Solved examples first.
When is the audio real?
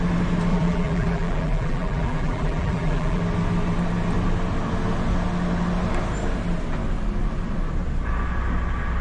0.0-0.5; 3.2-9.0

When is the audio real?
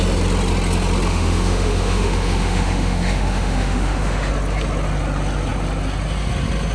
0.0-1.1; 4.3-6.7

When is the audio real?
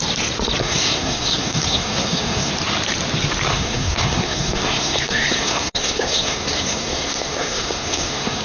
0.0-0.6; 2.5-3.5